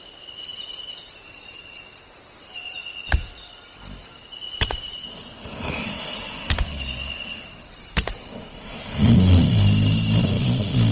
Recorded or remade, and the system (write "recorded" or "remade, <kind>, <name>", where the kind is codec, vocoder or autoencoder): recorded